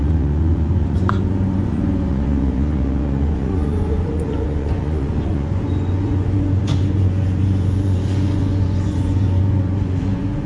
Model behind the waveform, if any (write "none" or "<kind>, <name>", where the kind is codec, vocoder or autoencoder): vocoder, Vocos